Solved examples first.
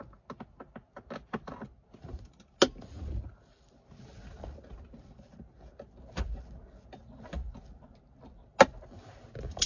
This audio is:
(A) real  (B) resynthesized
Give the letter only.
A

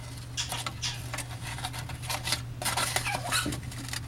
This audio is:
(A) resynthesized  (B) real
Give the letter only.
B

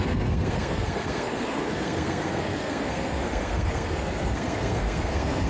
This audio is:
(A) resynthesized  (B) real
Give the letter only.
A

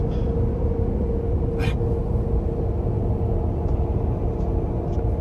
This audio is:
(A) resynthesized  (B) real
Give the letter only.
B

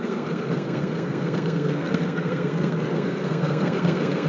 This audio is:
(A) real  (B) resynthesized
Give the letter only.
B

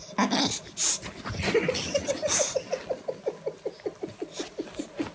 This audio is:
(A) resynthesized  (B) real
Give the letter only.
B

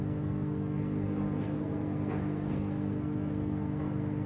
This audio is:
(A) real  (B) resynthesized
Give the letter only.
B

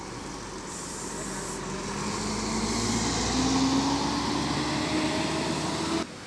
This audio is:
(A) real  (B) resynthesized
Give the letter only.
A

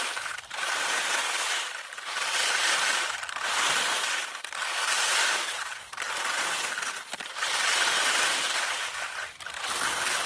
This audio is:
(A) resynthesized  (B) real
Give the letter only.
B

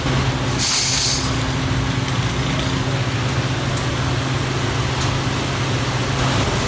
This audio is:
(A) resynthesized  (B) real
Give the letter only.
B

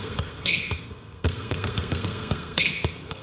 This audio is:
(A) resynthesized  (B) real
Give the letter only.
A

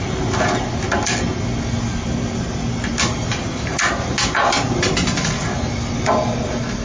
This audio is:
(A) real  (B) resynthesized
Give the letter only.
A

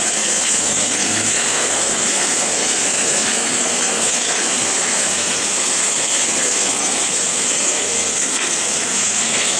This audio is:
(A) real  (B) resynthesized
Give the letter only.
B